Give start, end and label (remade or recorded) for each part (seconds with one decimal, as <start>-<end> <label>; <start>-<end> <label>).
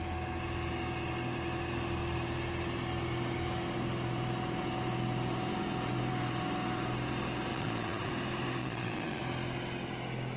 0.0-7.5 recorded; 7.5-8.1 remade; 8.1-8.6 recorded; 8.6-9.2 remade; 9.2-10.4 recorded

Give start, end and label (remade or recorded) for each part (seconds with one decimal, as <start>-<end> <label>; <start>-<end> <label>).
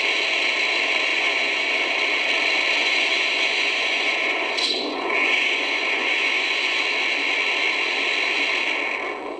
0.0-1.1 recorded; 1.1-1.8 remade; 1.8-2.8 recorded; 2.8-6.8 remade; 6.8-9.4 recorded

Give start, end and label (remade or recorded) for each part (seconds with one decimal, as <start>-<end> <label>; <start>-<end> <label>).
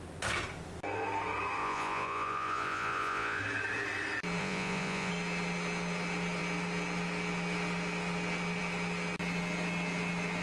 0.0-1.6 recorded; 1.6-3.4 remade; 3.4-4.4 recorded; 4.4-5.1 remade; 5.1-10.4 recorded